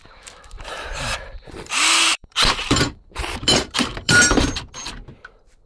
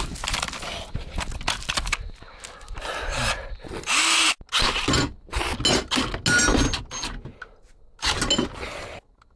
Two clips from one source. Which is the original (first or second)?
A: second